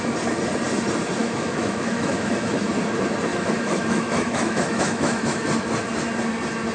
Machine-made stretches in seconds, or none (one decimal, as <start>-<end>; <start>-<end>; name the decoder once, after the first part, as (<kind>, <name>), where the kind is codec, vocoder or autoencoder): 1.2-2.7 (autoencoder, DAC-VAE); 3.3-5.4